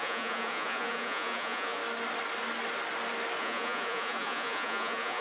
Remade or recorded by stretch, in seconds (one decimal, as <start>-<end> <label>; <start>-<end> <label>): 0.0-1.8 remade; 1.8-3.4 recorded; 3.4-5.2 remade